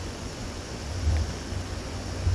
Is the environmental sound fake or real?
fake